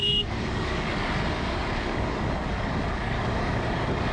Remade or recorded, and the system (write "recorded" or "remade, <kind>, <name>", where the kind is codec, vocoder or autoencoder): remade, codec, DAC